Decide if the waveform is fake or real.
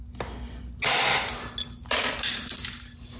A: real